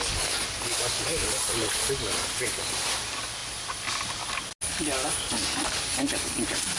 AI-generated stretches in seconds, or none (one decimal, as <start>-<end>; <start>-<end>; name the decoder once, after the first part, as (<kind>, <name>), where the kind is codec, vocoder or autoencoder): none